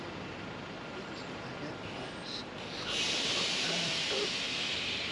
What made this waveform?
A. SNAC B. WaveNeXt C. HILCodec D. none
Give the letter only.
D